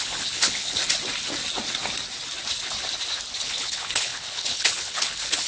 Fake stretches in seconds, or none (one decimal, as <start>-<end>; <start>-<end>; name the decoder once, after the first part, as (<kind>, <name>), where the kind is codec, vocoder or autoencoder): 0.0-0.8 (codec, HILCodec); 3.4-5.5